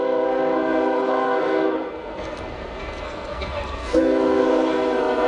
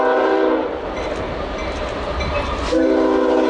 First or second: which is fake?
first